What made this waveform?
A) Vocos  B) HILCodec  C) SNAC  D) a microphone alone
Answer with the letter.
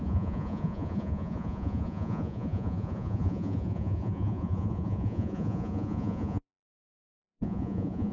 A